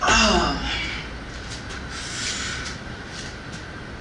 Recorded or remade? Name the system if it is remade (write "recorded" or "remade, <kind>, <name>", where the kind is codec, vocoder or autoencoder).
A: recorded